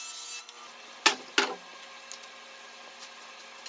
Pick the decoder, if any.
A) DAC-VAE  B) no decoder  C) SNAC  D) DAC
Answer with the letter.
B